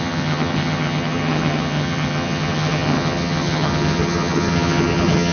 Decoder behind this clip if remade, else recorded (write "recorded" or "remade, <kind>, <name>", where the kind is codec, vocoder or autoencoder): remade, vocoder, HiFi-GAN